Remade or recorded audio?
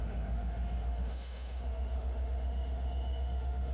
remade